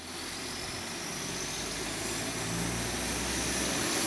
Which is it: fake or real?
real